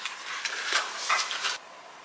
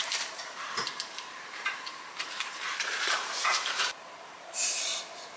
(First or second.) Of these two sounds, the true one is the first